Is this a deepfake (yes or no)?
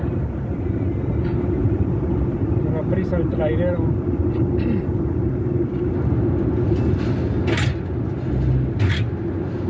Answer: no